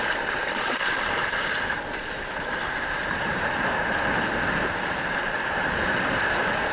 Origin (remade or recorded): recorded